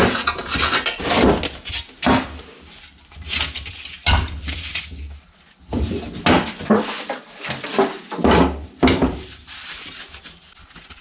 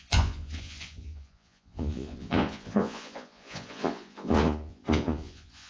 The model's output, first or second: second